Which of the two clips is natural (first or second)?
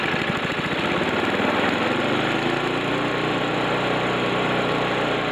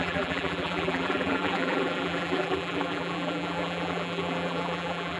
first